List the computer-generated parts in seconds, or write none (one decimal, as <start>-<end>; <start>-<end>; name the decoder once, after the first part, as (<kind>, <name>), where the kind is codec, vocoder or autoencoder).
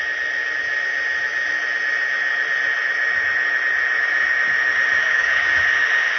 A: 5.0-5.6 (codec, DAC)